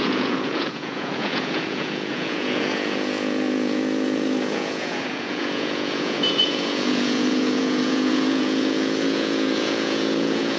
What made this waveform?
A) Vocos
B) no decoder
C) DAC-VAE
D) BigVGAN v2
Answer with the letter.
A